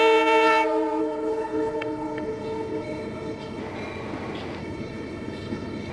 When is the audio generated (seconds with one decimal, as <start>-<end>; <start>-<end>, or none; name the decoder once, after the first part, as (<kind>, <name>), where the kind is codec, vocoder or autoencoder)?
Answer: 1.0-3.6 (codec, HILCodec); 4.6-5.9